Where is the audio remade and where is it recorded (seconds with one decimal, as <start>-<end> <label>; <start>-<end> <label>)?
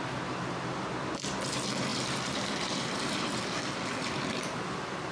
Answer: 0.0-1.9 recorded; 1.9-5.1 remade